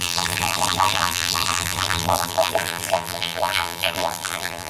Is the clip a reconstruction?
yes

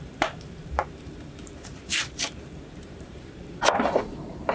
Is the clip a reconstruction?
yes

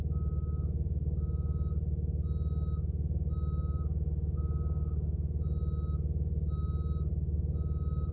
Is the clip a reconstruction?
no